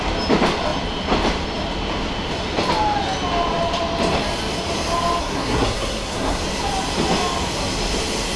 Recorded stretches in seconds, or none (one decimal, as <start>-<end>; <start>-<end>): 0.0-5.2; 6.4-8.4